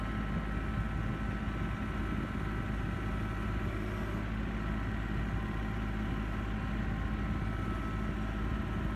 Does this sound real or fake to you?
real